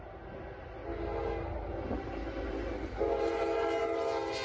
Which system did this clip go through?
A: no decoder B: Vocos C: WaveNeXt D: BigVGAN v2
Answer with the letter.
A